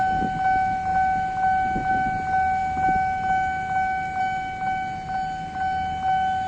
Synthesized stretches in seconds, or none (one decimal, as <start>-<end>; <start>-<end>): none